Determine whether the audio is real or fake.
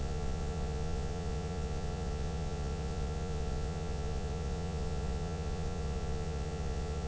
fake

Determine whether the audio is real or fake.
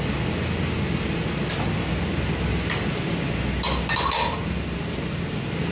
real